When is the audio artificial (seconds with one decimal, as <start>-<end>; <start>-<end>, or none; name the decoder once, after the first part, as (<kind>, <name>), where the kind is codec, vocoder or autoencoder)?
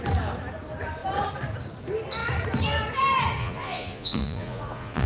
3.4-5.1 (vocoder, Vocos)